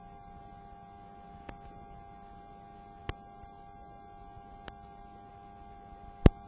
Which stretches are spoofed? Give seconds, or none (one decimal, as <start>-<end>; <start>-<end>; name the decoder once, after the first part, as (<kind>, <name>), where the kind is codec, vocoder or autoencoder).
none